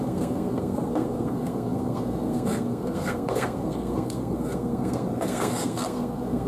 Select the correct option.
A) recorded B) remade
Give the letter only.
B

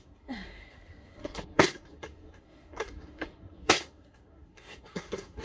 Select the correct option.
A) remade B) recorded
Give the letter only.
A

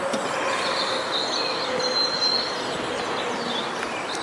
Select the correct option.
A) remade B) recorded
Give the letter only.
B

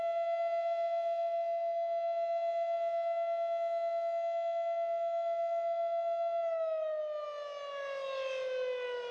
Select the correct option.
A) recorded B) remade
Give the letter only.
A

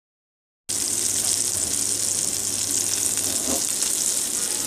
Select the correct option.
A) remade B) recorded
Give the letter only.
B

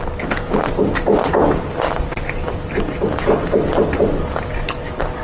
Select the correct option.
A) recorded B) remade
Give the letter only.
A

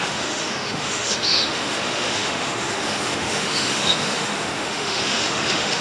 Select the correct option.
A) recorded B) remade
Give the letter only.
B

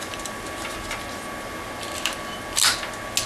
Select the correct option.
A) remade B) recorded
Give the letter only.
B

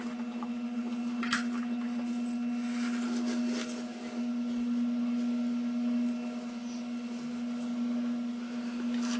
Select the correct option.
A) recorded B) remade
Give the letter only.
A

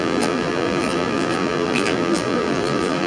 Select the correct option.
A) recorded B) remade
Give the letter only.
B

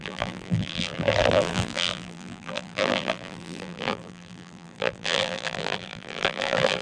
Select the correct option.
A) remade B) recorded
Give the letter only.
A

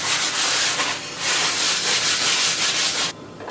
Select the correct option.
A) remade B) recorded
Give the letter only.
B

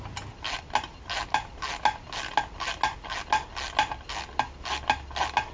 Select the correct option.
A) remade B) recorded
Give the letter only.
B